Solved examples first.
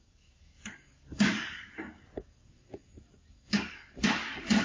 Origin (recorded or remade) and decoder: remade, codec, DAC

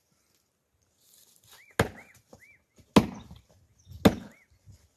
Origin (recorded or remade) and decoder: recorded